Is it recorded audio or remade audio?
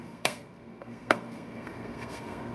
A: remade